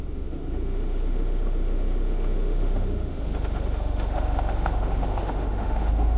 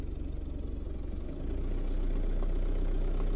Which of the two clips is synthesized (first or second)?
first